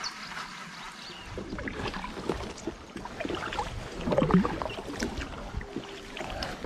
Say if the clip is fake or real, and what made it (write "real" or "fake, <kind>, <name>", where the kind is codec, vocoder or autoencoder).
real